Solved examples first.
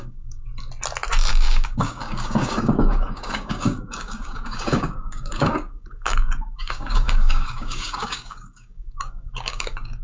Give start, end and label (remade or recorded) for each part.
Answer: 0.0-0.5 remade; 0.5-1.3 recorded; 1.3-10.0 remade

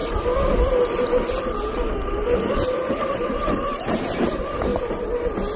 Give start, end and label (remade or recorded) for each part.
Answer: 0.0-3.3 recorded; 3.3-4.7 remade; 4.7-5.6 recorded